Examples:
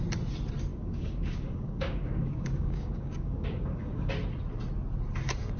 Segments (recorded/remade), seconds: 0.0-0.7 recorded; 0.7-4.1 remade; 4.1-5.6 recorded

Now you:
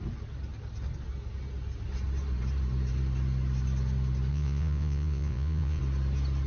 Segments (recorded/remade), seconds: 0.0-4.3 recorded; 4.3-5.8 remade; 5.8-6.5 recorded

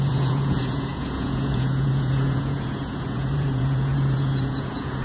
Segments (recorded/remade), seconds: 0.0-5.0 remade